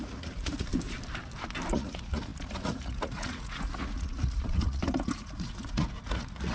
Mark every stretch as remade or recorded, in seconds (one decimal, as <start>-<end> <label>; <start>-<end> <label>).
0.0-0.7 remade; 0.7-1.7 recorded; 1.7-6.5 remade